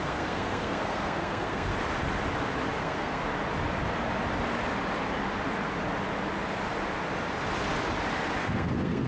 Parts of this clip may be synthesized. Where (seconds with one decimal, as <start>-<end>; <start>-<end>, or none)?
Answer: 0.0-1.7; 2.8-3.2; 8.4-9.1